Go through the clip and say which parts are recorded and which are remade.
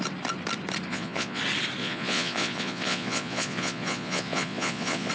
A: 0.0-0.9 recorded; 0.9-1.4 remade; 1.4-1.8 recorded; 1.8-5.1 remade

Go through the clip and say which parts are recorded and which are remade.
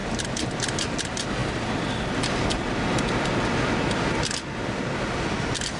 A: 0.0-5.8 recorded